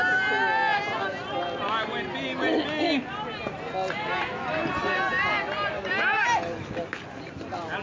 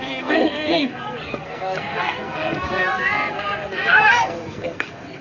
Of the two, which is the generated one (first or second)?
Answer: second